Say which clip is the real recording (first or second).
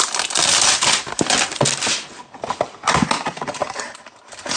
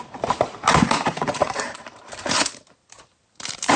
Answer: first